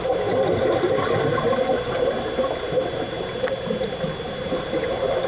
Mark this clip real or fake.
real